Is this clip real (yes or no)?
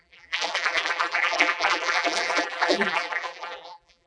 no